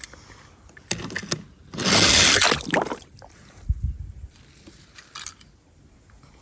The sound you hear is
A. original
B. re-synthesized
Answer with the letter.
A